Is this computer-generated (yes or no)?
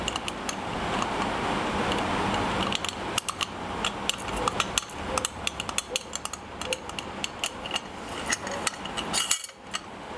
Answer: no